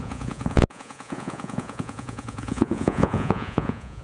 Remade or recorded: remade